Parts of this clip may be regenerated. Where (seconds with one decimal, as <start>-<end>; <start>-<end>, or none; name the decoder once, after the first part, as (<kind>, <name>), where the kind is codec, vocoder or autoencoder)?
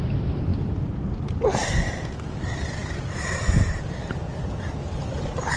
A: none